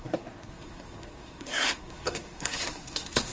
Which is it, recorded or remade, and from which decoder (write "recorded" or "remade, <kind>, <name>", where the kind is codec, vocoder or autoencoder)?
remade, codec, SNAC